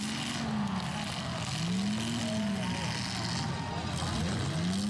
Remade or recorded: recorded